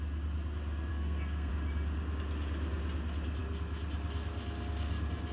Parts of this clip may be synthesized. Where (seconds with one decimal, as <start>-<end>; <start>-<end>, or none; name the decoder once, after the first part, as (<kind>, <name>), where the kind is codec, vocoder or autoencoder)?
0.9-1.5 (codec, SNAC)